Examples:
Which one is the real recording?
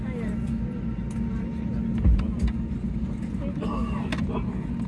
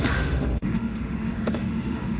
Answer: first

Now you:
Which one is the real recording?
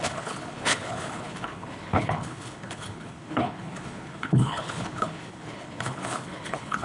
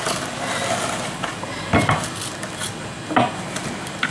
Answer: second